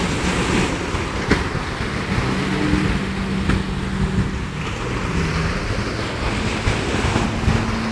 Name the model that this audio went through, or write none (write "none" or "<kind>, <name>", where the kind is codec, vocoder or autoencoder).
none